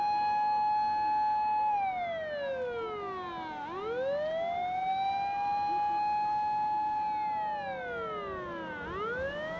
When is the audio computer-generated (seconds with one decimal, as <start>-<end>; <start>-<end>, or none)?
none